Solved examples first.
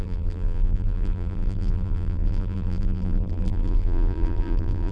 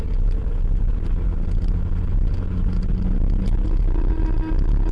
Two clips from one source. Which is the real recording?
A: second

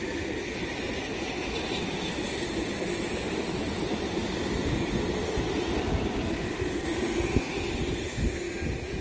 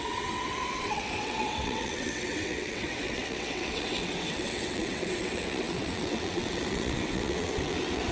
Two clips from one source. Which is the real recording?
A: first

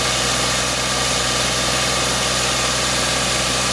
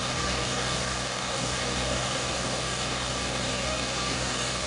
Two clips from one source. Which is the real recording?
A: first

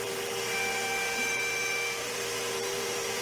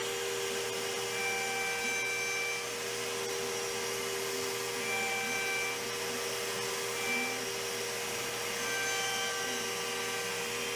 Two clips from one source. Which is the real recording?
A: second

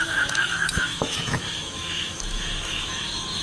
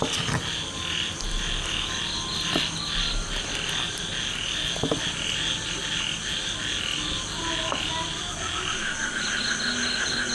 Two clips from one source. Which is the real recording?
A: second